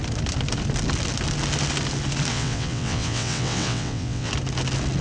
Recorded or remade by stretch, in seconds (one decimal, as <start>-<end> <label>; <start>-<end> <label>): 0.0-2.3 recorded; 2.3-4.3 remade; 4.3-5.0 recorded